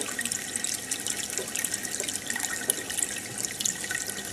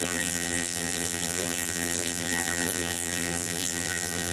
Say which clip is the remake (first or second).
second